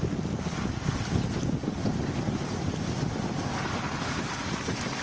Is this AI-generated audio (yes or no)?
no